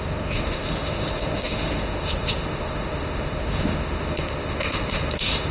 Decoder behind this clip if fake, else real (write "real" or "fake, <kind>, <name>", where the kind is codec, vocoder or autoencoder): fake, autoencoder, DAC-VAE